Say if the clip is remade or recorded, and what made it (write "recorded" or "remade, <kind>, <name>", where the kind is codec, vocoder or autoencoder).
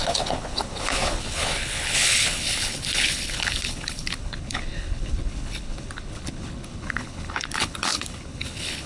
remade, codec, HILCodec